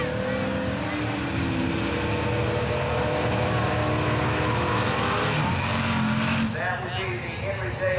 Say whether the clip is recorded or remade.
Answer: recorded